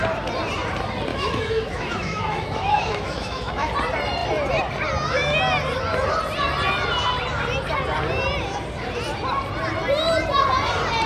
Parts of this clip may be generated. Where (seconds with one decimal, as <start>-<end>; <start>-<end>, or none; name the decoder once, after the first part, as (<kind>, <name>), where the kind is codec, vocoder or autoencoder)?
1.1-3.7 (autoencoder, DAC-VAE)

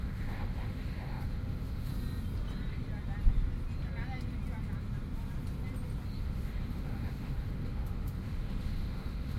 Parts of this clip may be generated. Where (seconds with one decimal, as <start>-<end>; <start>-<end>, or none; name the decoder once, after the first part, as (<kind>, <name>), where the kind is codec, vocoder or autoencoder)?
0.0-1.9 (autoencoder, DAC-VAE); 6.2-9.4

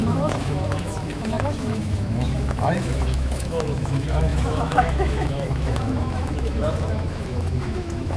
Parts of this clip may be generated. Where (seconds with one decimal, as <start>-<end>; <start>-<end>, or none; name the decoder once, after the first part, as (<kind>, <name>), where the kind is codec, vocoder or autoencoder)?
0.0-8.2 (autoencoder, DAC-VAE)

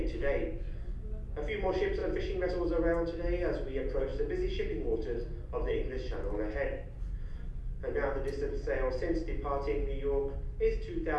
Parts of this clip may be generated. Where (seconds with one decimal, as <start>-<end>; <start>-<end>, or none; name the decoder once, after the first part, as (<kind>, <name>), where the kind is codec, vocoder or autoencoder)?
none

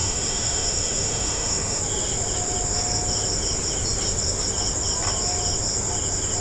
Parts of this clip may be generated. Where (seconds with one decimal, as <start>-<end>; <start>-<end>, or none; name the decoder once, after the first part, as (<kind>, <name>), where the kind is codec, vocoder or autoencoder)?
0.0-1.8 (autoencoder, DAC-VAE)

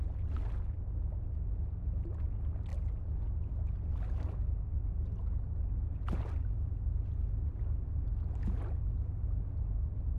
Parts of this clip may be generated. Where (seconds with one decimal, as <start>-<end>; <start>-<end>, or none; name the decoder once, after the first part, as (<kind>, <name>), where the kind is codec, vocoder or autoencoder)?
none

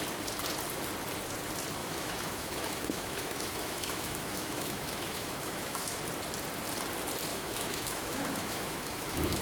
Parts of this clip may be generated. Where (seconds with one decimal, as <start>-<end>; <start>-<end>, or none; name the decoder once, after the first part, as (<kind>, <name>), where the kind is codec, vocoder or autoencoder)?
1.8-6.0 (autoencoder, DAC-VAE); 7.3-9.4

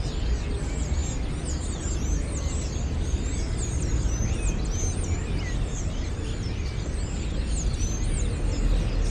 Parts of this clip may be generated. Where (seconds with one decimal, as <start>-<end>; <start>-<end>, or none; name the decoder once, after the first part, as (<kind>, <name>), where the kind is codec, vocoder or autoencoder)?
none